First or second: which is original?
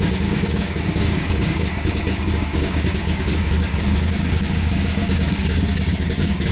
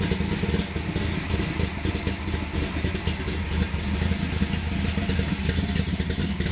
second